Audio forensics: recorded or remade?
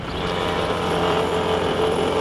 remade